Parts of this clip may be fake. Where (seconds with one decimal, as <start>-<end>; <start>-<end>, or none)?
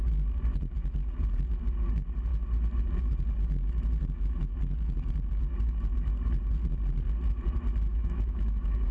7.9-8.9